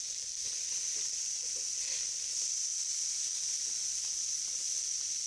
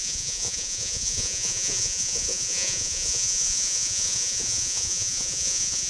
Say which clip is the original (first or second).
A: first